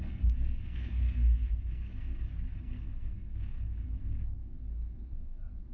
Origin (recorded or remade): remade